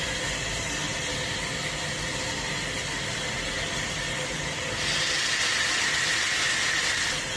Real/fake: real